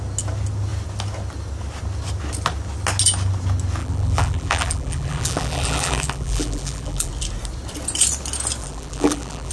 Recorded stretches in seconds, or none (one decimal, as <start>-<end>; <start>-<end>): 0.0-3.8; 7.1-8.6